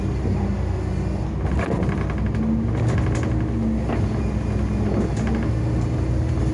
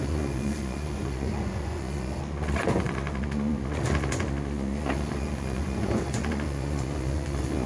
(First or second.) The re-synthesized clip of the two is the second